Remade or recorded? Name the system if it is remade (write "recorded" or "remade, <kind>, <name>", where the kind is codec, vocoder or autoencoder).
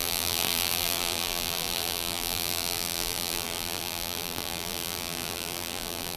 remade, vocoder, BigVGAN v2